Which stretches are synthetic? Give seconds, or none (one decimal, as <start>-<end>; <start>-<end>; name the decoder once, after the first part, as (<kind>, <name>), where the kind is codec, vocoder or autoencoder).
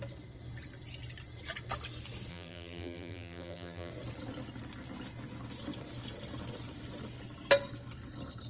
2.3-3.9 (vocoder, BigVGAN v2)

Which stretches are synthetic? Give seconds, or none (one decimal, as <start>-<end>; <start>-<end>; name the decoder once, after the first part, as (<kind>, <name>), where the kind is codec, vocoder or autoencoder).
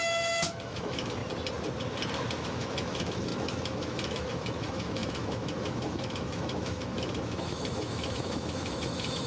0.0-1.2 (autoencoder, DAC-VAE); 2.4-9.3